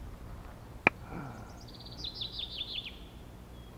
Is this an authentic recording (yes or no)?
yes